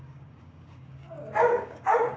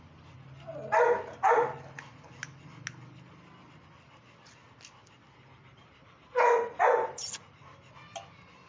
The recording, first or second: second